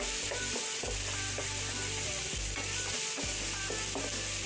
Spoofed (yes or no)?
no